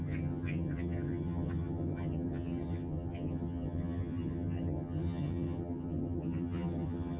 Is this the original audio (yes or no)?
no